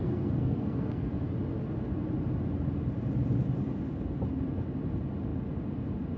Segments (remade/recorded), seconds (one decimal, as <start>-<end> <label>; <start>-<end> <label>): 0.0-1.1 remade; 1.1-6.2 recorded